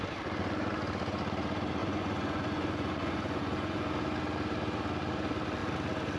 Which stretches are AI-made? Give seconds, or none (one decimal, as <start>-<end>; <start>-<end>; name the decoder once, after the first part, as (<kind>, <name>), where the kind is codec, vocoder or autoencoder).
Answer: 1.8-3.9 (vocoder, Vocos)